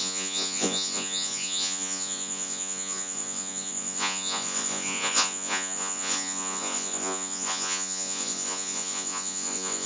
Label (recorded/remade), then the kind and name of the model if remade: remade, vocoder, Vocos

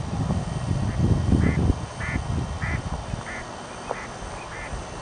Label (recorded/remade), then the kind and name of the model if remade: recorded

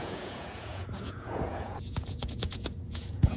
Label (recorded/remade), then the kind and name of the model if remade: remade, vocoder, Vocos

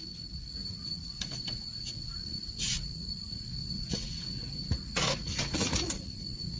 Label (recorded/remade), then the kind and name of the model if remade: remade, vocoder, Vocos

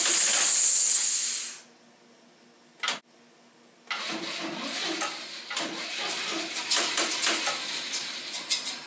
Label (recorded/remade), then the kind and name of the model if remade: recorded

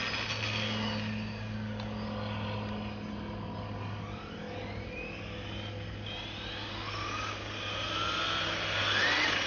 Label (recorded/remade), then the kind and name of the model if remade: recorded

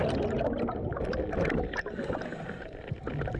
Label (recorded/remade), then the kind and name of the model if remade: recorded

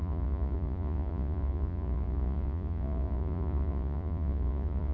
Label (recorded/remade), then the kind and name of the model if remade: remade, vocoder, Vocos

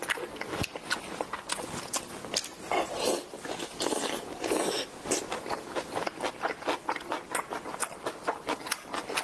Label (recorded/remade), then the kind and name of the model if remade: recorded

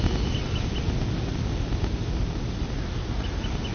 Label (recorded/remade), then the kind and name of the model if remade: recorded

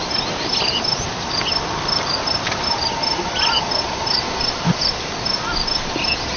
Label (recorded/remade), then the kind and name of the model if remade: recorded